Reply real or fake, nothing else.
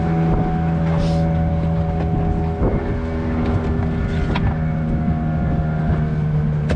real